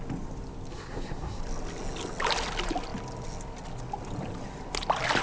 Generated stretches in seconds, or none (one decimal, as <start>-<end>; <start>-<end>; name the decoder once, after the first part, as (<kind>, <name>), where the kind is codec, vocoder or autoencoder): 0.7-1.4 (codec, SNAC)